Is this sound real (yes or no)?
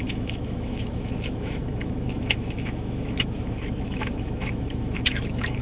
no